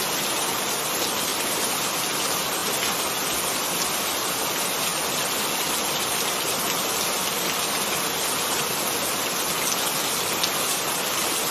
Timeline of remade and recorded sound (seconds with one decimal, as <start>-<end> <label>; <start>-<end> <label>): 0.0-1.3 recorded; 1.3-1.8 remade; 1.8-11.5 recorded